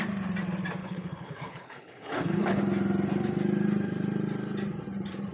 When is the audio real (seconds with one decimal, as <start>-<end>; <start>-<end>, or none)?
0.0-0.8; 2.6-5.3